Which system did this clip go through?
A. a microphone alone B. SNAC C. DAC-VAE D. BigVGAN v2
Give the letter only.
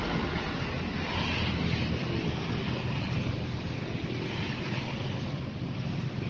A